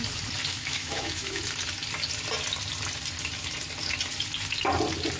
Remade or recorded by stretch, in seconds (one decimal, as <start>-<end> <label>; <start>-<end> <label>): 0.0-0.5 recorded; 0.5-1.4 remade; 1.4-5.2 recorded